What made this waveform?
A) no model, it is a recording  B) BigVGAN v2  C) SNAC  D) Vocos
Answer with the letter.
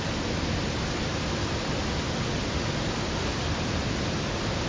A